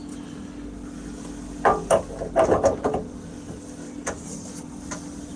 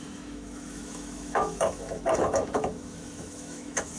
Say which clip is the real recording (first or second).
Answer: first